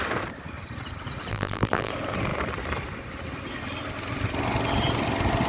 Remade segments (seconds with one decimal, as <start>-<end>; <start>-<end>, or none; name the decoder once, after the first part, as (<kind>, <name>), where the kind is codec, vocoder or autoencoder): 1.3-1.9 (vocoder, BigVGAN v2)